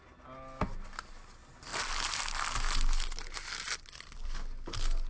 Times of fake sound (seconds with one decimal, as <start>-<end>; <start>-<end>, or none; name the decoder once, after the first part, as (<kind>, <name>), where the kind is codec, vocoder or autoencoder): none